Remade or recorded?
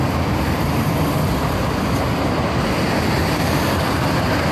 recorded